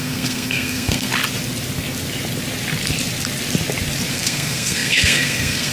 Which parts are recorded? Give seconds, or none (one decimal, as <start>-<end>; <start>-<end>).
1.1-4.1